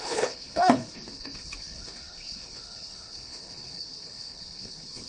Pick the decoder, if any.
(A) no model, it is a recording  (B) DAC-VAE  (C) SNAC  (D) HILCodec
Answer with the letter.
D